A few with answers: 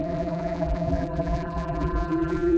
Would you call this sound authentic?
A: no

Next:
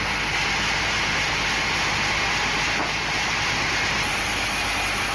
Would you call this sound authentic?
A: yes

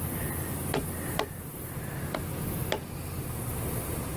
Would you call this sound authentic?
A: yes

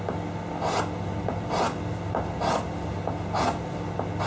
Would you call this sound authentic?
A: yes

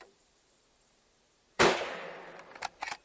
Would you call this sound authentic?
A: no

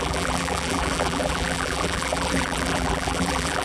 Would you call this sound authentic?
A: no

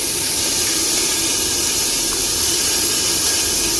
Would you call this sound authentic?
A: no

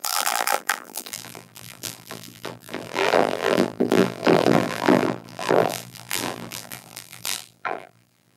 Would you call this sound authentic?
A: no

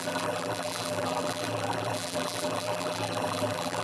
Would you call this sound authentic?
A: no